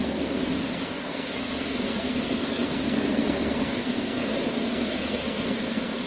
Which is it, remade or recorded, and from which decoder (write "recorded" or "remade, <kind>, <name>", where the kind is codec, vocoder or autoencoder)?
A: remade, codec, SNAC